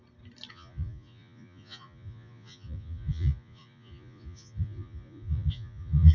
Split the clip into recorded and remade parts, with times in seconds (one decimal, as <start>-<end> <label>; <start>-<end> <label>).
0.0-0.5 recorded; 0.5-6.1 remade